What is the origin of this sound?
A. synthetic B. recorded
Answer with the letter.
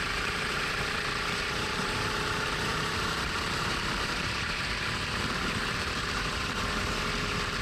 A